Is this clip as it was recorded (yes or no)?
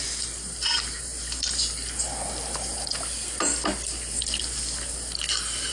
yes